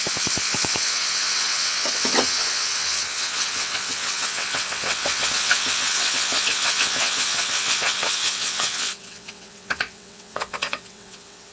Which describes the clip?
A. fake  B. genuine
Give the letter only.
A